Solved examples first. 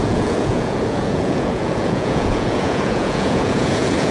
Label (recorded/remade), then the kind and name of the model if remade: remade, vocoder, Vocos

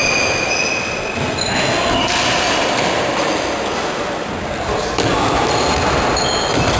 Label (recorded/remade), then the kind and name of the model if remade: recorded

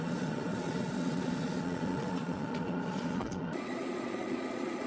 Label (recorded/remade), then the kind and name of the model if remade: remade, vocoder, Vocos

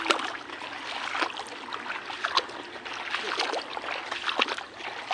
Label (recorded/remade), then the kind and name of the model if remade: recorded